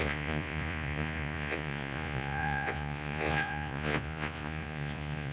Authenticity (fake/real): fake